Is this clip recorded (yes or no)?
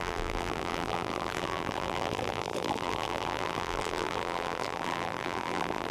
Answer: no